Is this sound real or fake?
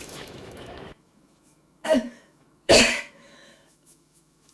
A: fake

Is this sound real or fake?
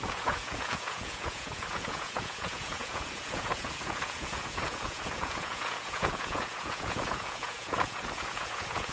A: fake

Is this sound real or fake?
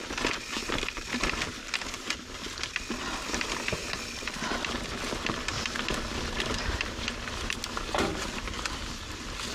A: real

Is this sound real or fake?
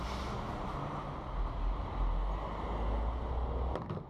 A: real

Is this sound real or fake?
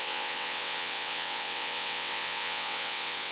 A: fake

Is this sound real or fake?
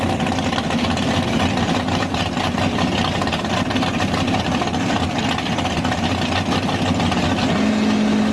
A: real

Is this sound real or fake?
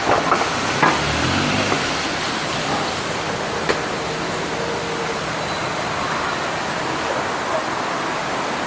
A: real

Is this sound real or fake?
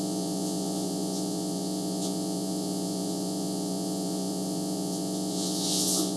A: fake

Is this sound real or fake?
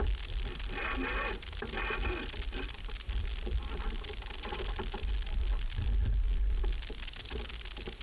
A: real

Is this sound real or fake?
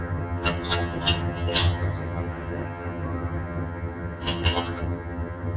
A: fake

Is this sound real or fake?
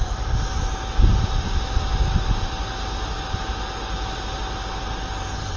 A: real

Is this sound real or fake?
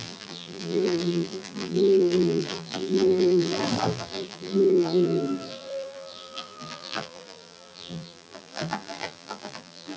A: fake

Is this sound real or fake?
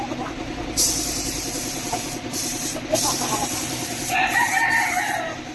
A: fake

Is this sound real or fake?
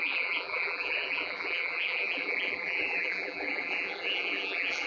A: fake